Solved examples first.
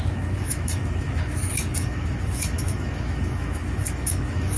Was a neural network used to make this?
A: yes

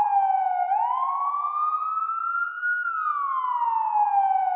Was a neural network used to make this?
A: no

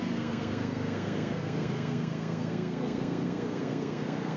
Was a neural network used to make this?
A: yes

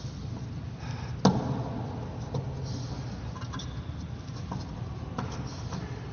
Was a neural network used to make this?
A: no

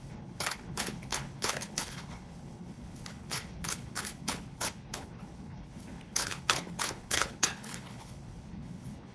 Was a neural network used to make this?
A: yes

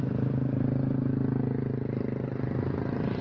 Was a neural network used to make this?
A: no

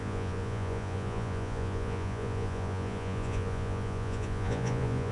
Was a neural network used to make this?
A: yes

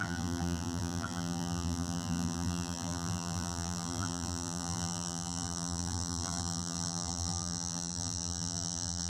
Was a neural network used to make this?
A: yes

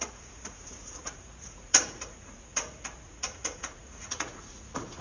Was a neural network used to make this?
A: yes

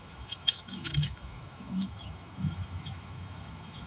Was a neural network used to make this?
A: yes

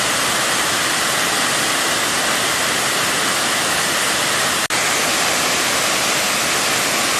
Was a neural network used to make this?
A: no